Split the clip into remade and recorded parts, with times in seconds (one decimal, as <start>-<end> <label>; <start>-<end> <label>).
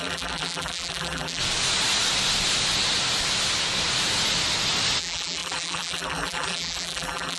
0.0-1.4 remade; 1.4-5.0 recorded; 5.0-7.4 remade